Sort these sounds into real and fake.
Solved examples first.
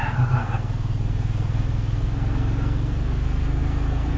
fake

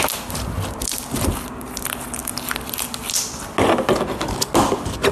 real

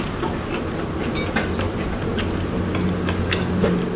real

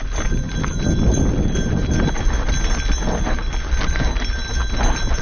real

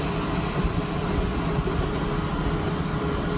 real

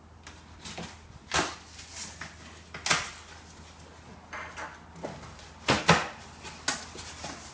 real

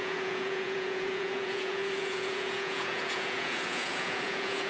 fake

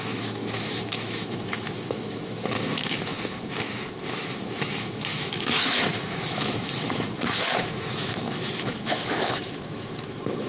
fake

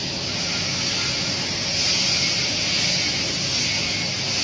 real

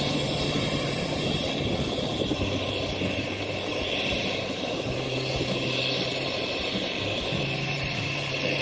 fake